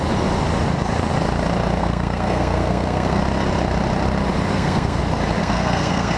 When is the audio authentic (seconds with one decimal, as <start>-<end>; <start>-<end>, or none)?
0.0-1.8; 3.2-4.5; 5.0-5.4